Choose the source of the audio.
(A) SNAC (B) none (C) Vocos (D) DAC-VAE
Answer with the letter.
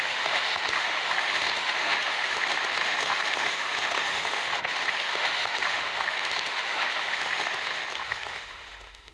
D